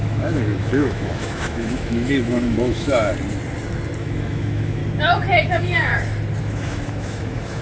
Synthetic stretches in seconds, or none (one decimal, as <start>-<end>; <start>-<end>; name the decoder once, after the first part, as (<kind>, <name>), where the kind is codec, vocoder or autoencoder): 0.0-3.1 (autoencoder, DAC-VAE); 4.0-4.8; 5.5-5.9; 6.4-7.6

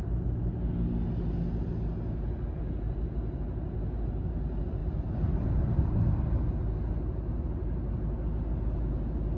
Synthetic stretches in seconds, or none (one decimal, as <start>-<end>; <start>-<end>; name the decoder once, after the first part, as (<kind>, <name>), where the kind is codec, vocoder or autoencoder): 4.8-5.8 (vocoder, BigVGAN v2)